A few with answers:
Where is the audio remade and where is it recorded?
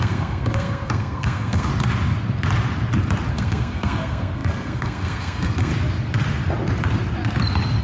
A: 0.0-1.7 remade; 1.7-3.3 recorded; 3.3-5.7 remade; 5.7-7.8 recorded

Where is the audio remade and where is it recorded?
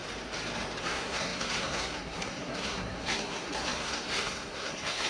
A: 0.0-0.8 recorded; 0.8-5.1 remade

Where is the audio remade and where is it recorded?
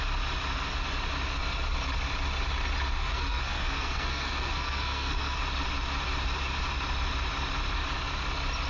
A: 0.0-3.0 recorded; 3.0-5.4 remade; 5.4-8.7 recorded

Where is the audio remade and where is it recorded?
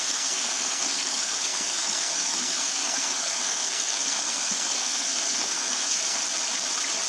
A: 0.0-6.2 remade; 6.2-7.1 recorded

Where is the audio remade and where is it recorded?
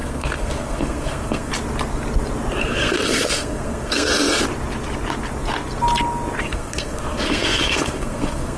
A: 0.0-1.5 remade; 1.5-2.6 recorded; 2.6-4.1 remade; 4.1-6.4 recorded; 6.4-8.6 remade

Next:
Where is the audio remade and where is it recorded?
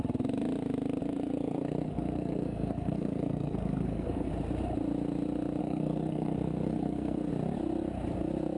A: 0.0-1.0 recorded; 1.0-4.3 remade; 4.3-5.6 recorded; 5.6-7.3 remade; 7.3-8.6 recorded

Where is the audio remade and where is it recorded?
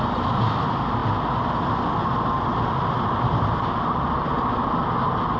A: 0.0-5.4 recorded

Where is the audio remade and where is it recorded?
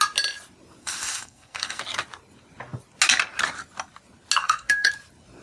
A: 0.0-0.8 recorded; 0.8-1.8 remade; 1.8-4.4 recorded; 4.4-4.9 remade; 4.9-5.4 recorded